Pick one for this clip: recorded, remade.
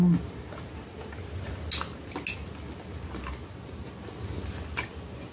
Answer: recorded